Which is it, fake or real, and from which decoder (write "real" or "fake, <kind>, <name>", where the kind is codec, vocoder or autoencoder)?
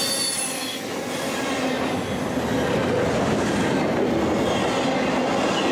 real